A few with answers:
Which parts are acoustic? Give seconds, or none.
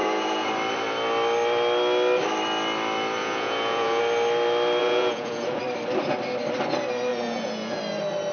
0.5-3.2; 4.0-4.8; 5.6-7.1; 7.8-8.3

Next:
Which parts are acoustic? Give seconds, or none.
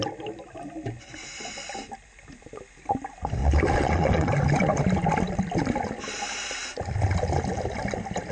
0.0-3.4; 4.3-8.3